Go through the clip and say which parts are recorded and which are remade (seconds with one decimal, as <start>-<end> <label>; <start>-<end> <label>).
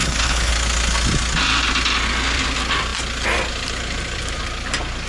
0.0-0.5 remade; 0.5-5.1 recorded